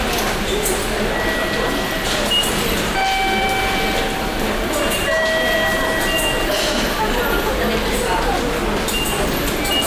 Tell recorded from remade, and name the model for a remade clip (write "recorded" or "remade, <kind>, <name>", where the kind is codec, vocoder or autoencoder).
recorded